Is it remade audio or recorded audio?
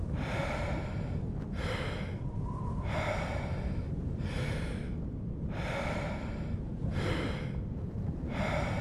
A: recorded